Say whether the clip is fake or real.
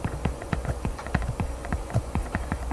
fake